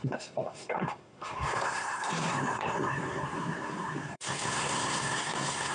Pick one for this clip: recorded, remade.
remade